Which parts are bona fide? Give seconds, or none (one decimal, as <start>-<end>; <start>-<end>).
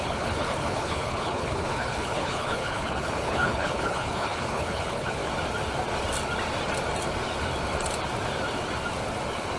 5.2-9.6